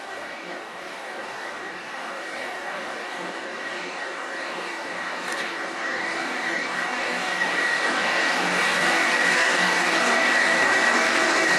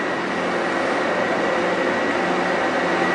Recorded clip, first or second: second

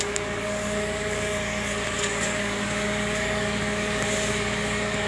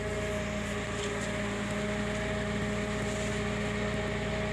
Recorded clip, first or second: second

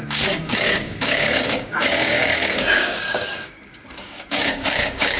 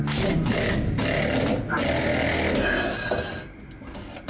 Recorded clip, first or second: second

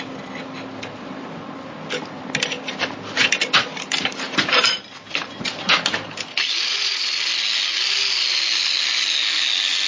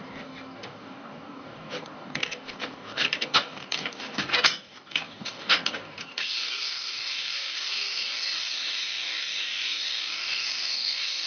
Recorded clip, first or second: first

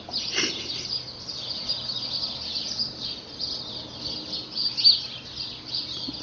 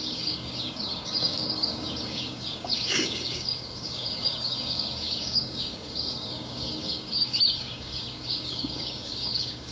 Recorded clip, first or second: first